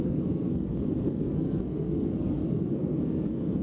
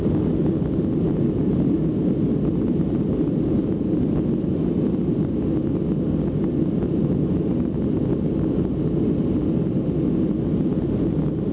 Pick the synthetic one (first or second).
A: first